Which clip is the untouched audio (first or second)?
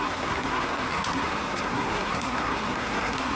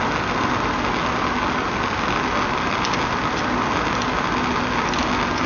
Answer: second